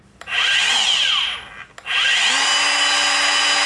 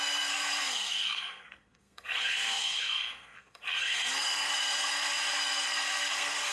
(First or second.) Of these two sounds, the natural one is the first